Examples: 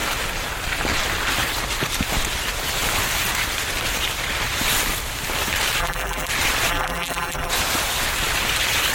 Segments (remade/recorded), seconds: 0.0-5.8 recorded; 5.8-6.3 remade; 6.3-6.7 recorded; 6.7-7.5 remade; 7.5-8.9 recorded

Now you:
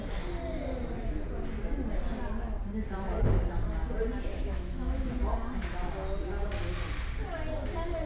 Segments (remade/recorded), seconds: 0.0-4.3 recorded; 4.3-5.1 remade; 5.1-8.1 recorded

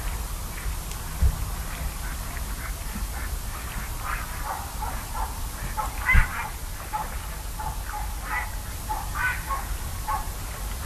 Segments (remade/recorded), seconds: 0.0-10.9 recorded

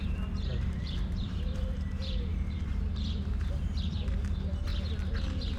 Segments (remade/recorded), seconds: 0.0-4.7 remade; 4.7-5.6 recorded

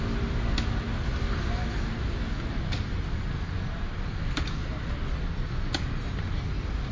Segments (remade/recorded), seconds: 0.0-6.9 recorded

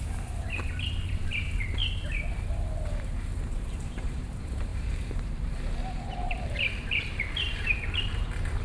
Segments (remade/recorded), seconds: 0.0-1.8 remade; 1.8-3.4 recorded; 3.4-8.6 remade

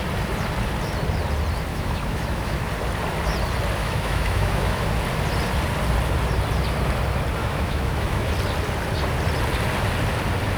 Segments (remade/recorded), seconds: 0.0-1.7 recorded; 1.7-2.7 remade; 2.7-3.8 recorded; 3.8-4.9 remade; 4.9-7.4 recorded; 7.4-8.3 remade; 8.3-10.6 recorded